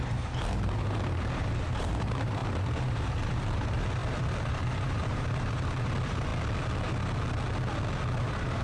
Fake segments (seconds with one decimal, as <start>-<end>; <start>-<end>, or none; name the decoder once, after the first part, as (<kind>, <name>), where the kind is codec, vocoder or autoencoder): 0.0-6.3 (vocoder, BigVGAN v2); 8.2-8.6